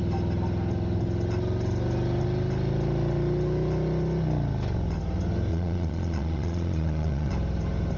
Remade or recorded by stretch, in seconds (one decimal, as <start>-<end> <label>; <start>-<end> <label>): 0.0-5.5 recorded; 5.5-7.3 remade; 7.3-8.0 recorded